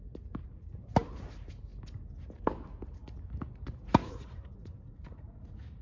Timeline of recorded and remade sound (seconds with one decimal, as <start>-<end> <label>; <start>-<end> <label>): 0.0-4.0 recorded; 4.0-5.8 remade